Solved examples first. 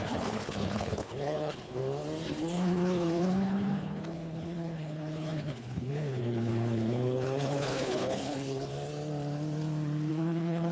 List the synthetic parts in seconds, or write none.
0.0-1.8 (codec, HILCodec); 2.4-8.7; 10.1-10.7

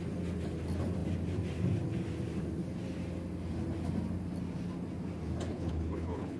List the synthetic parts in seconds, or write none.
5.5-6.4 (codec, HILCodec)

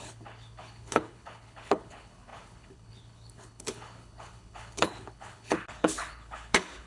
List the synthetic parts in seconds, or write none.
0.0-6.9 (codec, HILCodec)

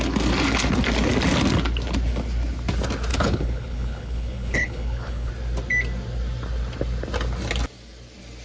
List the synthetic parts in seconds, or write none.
3.1-5.3 (codec, HILCodec)

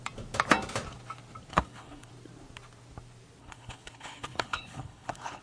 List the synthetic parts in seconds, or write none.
1.5-2.1 (codec, HILCodec); 3.4-5.4

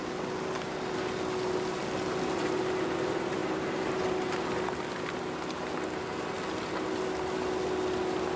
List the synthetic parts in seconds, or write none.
none

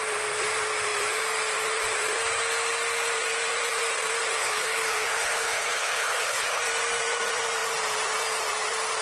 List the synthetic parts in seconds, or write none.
4.4-6.6 (codec, HILCodec)

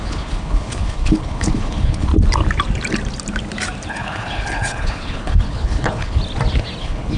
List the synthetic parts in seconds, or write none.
0.0-2.1 (codec, HILCodec); 3.9-6.2; 6.8-7.2